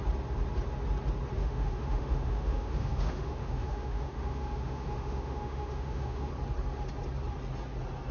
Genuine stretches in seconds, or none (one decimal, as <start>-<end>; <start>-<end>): 0.0-1.4; 6.3-8.1